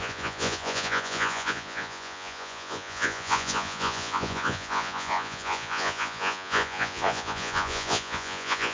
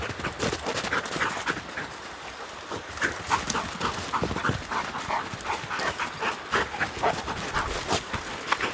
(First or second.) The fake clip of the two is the first